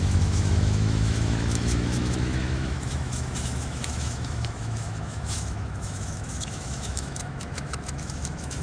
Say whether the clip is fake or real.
fake